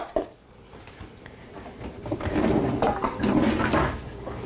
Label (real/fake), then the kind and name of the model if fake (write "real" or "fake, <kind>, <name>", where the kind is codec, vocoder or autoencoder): fake, vocoder, BigVGAN v2